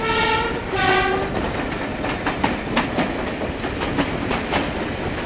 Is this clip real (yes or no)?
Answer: yes